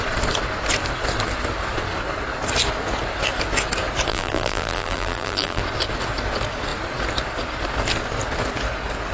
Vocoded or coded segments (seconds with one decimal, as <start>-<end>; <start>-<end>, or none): 4.1-5.6